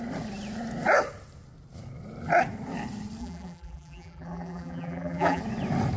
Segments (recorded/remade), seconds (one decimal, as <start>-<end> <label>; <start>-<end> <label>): 0.0-3.2 recorded; 3.2-5.4 remade; 5.4-6.0 recorded